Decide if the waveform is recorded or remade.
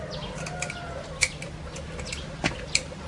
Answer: recorded